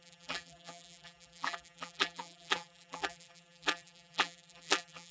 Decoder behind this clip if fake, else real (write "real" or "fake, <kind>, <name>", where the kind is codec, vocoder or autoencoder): fake, vocoder, BigVGAN v2